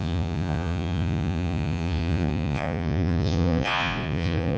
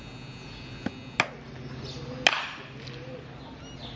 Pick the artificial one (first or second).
first